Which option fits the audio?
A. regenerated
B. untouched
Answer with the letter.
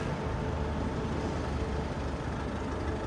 B